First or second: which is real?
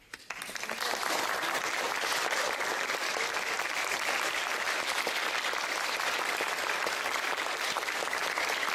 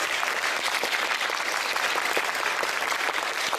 second